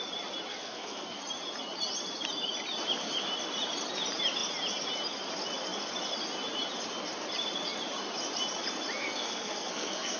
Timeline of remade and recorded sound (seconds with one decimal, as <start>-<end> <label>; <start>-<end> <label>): 0.0-0.5 recorded; 0.5-1.2 remade; 1.2-9.0 recorded; 9.0-10.2 remade

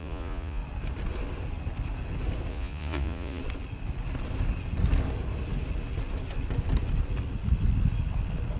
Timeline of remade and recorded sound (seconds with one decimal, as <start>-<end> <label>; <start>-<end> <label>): 0.0-0.6 remade; 0.6-2.5 recorded; 2.5-3.4 remade; 3.4-8.6 recorded

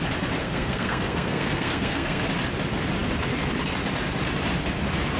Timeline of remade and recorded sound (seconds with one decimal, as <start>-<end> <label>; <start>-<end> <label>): 0.0-0.4 recorded; 0.4-2.2 remade; 2.2-5.2 recorded

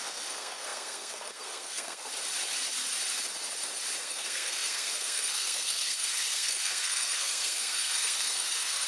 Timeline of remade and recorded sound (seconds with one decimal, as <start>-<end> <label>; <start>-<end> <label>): 0.0-2.1 remade; 2.1-4.0 recorded; 4.0-8.9 remade